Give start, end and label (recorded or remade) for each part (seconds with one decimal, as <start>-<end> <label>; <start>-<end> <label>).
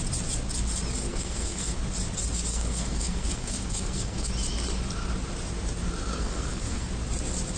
0.0-1.1 recorded; 1.1-1.8 remade; 1.8-2.5 recorded; 2.5-4.3 remade; 4.3-6.1 recorded; 6.1-6.9 remade; 6.9-7.6 recorded